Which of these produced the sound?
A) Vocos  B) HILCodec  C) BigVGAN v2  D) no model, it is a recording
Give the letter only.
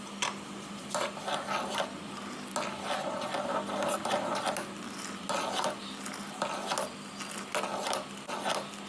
D